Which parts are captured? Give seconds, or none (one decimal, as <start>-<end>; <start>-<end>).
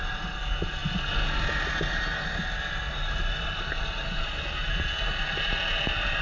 0.0-6.2